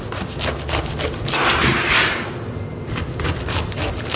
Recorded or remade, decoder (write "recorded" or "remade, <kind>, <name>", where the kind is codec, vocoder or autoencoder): recorded